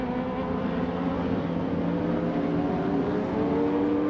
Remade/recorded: recorded